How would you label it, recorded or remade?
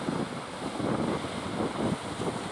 recorded